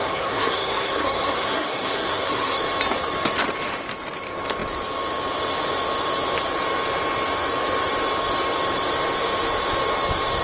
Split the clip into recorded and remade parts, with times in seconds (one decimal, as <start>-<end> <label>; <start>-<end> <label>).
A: 0.0-2.6 remade; 2.6-10.4 recorded